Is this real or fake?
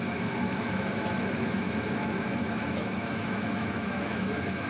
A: fake